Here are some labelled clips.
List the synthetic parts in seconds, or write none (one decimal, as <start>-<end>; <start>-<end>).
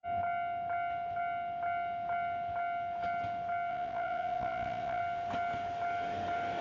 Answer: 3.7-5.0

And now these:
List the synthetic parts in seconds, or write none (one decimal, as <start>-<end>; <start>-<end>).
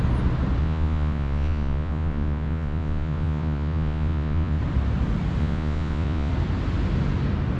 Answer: 0.6-4.6; 5.4-6.3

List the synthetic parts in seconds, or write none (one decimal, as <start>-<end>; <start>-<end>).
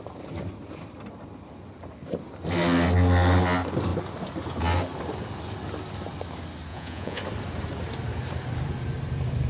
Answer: 6.7-7.2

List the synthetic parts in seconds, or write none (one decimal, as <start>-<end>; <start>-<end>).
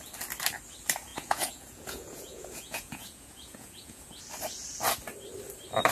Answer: 1.1-4.2